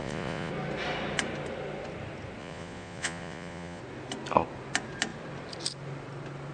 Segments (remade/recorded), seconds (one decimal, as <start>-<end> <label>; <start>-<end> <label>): 0.0-0.5 remade; 0.5-2.4 recorded; 2.4-3.8 remade; 3.8-6.5 recorded